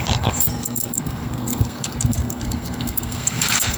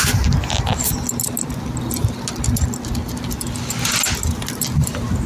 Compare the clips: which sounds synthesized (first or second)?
first